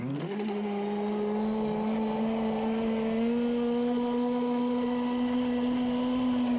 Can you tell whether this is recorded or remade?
recorded